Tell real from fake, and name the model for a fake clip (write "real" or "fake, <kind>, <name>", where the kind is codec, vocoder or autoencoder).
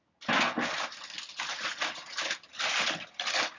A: real